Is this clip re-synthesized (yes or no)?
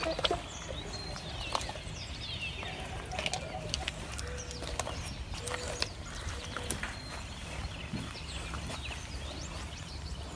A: no